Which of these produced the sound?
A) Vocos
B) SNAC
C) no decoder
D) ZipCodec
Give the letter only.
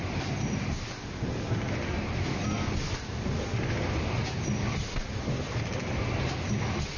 C